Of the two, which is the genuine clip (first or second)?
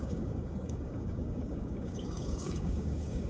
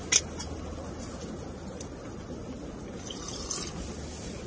second